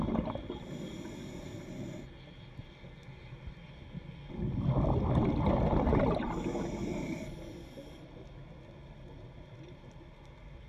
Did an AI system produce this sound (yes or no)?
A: no